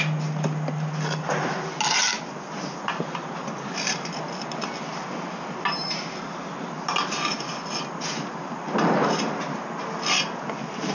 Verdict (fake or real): real